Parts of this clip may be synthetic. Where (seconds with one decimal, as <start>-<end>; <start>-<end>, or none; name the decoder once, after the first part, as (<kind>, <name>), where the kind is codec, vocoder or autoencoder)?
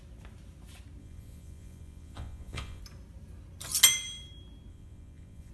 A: 1.0-2.8 (vocoder, Vocos); 4.7-5.5